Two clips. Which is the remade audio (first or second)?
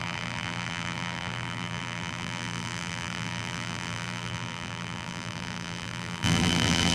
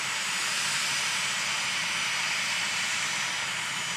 first